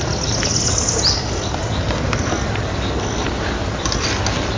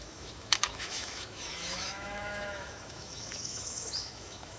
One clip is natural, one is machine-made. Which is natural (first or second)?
first